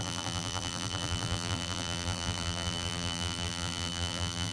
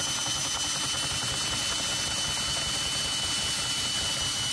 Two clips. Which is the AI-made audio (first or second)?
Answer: first